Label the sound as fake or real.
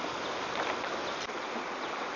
real